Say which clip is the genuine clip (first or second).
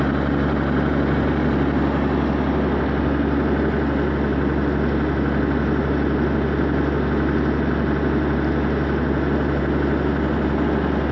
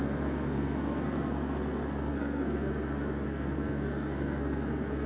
first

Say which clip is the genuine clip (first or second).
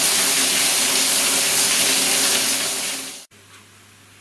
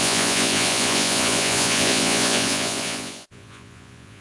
first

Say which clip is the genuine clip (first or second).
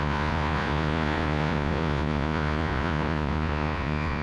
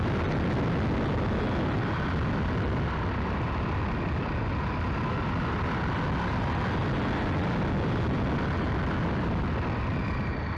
second